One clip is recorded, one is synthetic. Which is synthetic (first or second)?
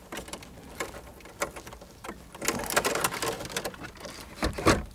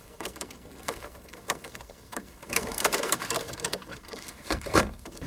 second